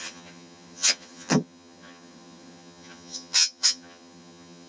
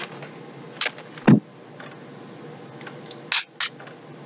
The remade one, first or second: first